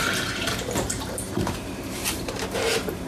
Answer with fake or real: fake